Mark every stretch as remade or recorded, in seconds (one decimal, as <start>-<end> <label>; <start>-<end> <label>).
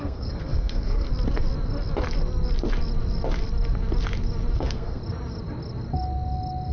0.0-1.1 remade; 1.1-4.6 recorded; 4.6-5.0 remade; 5.0-6.7 recorded